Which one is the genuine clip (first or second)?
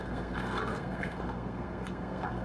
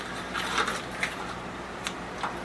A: second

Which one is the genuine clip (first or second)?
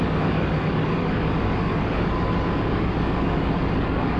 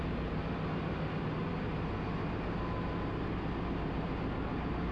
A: second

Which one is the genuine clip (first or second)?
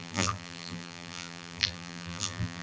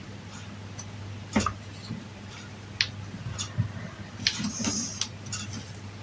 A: second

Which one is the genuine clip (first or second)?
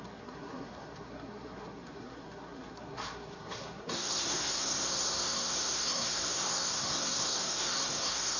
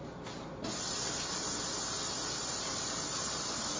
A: second